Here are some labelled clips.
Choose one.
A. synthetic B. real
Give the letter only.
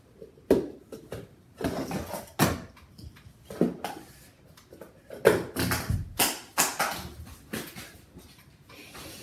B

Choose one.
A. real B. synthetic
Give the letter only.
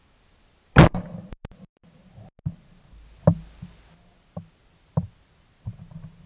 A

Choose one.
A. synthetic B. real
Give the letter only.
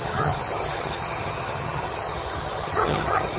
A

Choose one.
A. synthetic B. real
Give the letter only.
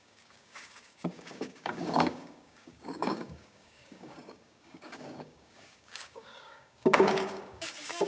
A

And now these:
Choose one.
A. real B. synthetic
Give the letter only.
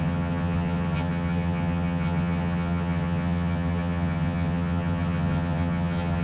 B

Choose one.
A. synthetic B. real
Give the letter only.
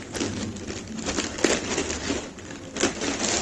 B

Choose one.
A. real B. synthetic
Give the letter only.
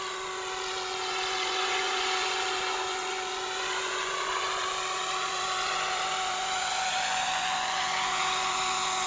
B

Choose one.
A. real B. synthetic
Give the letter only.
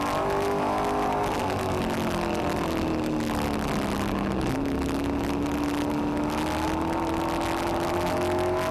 A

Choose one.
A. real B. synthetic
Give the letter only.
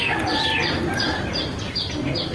A